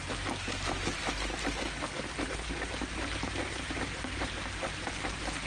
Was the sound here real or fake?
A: real